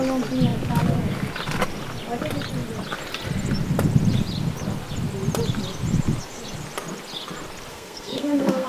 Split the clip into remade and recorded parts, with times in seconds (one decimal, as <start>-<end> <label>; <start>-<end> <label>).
0.0-7.7 recorded; 7.7-8.7 remade